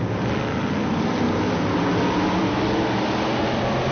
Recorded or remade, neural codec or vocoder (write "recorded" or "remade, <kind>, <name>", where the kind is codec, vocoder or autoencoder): recorded